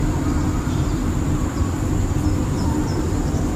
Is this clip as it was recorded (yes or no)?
no